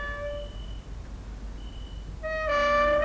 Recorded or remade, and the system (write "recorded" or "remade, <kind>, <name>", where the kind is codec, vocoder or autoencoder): recorded